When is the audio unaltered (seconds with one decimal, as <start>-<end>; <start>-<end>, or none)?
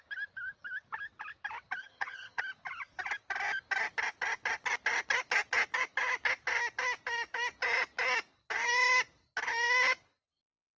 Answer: 0.0-1.8; 2.4-10.8